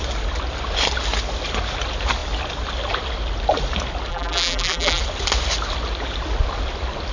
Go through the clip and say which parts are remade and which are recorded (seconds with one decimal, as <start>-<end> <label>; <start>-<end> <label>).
0.0-4.1 recorded; 4.1-5.0 remade; 5.0-7.1 recorded